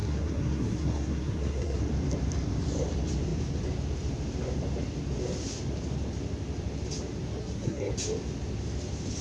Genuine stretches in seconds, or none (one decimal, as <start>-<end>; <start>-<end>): 1.8-7.4; 7.9-9.2